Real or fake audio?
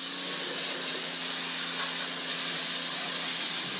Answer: real